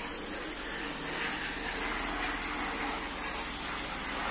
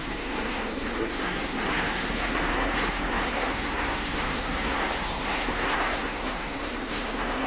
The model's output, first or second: second